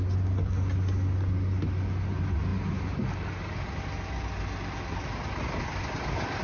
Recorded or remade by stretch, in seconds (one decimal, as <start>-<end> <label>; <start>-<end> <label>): 0.0-6.4 recorded